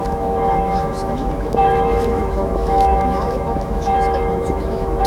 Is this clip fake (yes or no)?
yes